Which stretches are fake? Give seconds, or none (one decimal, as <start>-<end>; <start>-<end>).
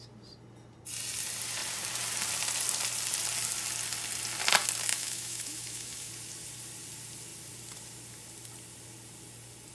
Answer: 4.9-6.1